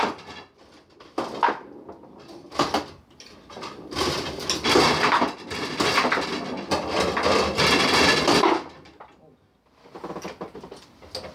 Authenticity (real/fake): real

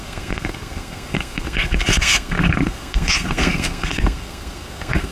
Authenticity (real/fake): fake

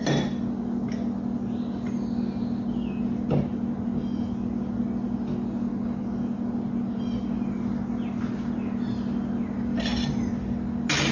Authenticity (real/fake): real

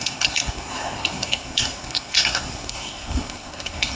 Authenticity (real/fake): fake